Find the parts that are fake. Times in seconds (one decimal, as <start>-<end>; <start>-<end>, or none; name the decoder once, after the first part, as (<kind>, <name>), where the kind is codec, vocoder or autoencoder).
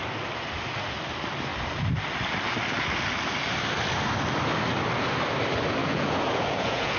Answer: 5.8-7.0 (vocoder, Vocos)